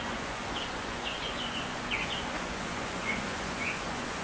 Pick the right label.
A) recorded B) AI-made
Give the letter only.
B